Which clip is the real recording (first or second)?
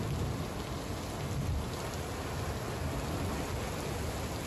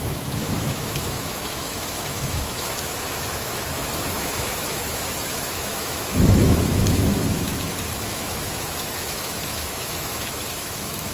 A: first